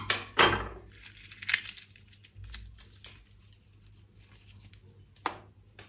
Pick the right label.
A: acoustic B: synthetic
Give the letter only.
A